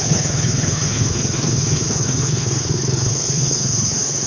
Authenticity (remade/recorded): remade